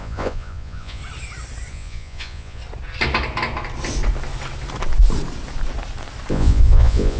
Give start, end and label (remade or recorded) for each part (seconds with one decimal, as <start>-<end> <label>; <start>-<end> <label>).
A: 0.0-1.0 remade; 1.0-1.7 recorded; 1.7-2.6 remade; 2.6-6.3 recorded; 6.3-7.2 remade